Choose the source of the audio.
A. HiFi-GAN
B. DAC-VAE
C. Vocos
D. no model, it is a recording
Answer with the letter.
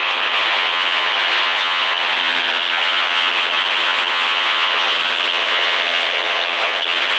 A